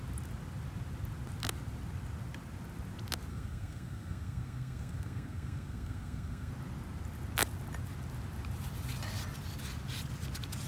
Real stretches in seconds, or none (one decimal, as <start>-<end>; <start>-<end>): 0.0-3.3; 6.5-10.7